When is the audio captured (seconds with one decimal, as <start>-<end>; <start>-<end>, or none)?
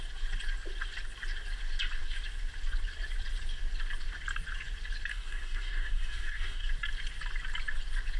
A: 0.0-5.1; 6.7-8.2